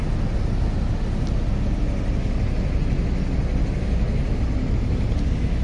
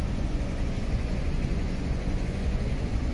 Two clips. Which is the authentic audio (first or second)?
first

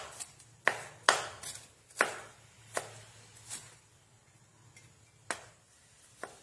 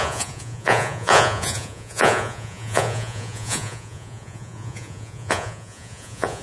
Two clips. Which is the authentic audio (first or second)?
first